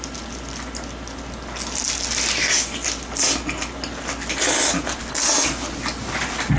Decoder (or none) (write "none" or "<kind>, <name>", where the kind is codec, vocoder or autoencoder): none